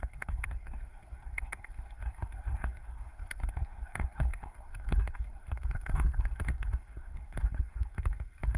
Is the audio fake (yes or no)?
yes